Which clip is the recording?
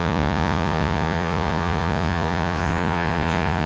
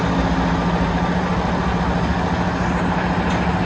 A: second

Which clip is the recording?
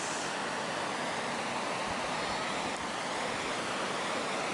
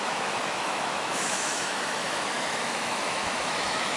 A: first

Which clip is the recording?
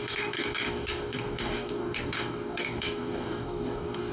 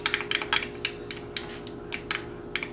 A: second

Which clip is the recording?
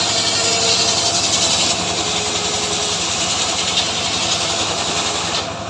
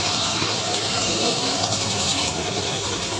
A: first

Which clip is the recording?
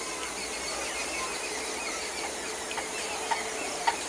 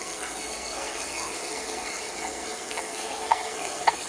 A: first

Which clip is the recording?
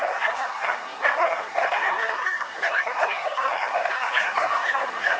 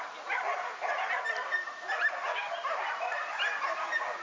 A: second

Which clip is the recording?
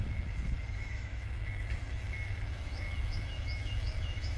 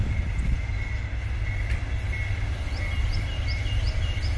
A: second